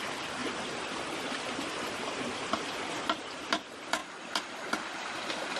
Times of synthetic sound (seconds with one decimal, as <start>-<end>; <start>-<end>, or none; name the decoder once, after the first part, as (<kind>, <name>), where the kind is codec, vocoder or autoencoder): none